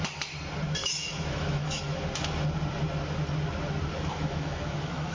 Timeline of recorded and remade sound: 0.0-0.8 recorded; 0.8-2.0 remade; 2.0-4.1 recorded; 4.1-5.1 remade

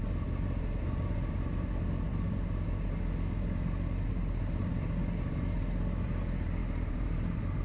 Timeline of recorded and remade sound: 0.0-6.6 recorded; 6.6-7.6 remade

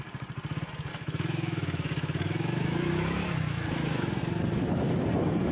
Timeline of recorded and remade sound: 0.0-0.9 recorded; 0.9-4.2 remade; 4.2-5.5 recorded

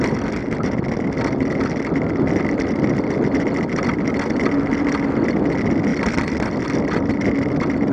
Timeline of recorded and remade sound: 0.0-5.9 recorded; 5.9-6.6 remade; 6.6-7.9 recorded

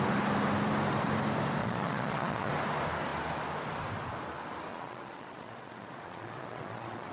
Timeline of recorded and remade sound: 0.0-1.6 recorded; 1.6-2.5 remade; 2.5-4.7 recorded; 4.7-7.1 remade

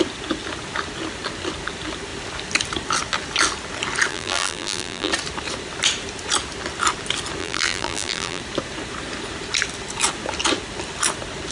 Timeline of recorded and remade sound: 0.0-4.1 recorded; 4.1-5.1 remade; 5.1-7.4 recorded; 7.4-8.4 remade; 8.4-11.5 recorded